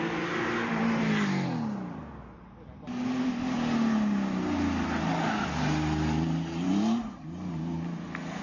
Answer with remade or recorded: recorded